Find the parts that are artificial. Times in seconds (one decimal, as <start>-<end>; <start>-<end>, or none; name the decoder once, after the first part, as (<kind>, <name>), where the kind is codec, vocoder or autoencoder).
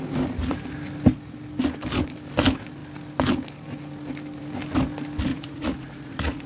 5.3-6.5 (vocoder, Vocos)